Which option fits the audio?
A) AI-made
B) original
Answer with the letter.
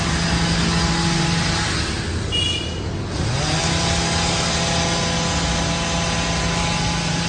B